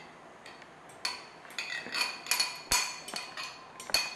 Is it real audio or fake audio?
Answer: real